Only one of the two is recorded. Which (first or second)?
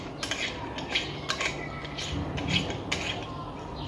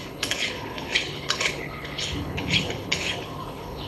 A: first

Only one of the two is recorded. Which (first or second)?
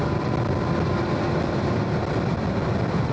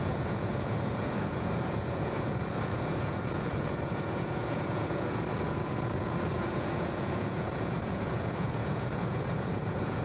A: first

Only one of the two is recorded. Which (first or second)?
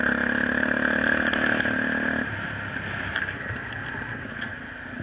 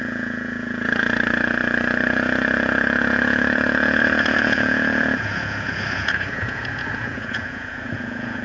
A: first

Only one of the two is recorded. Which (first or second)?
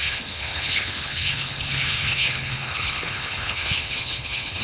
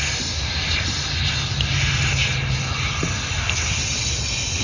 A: second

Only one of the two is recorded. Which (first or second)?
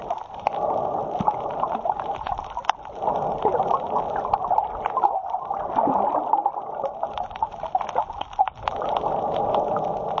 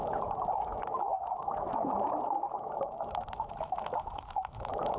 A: first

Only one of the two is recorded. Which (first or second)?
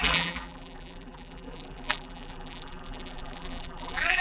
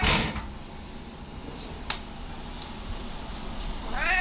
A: second